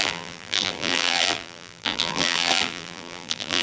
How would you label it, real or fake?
fake